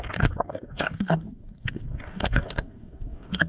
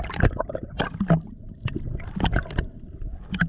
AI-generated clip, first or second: first